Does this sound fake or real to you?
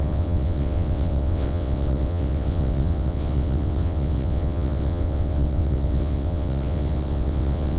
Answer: fake